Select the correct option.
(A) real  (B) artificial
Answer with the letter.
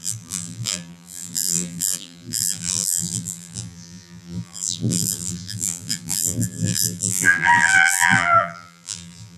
B